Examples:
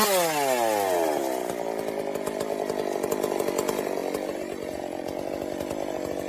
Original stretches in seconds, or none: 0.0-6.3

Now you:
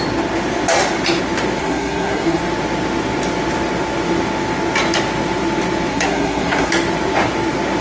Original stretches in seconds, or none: 0.0-1.6; 2.4-5.9; 6.7-7.8

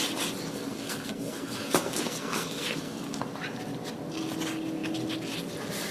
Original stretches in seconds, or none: 0.0-0.5; 3.2-5.9

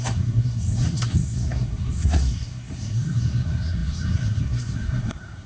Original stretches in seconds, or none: none

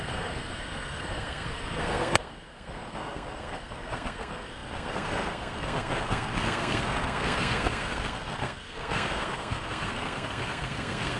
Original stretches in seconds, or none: none